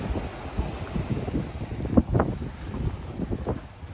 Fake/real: real